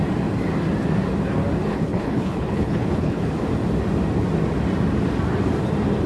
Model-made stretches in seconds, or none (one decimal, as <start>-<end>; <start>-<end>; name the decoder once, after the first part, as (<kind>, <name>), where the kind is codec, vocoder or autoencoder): 1.7-3.3 (codec, HILCodec)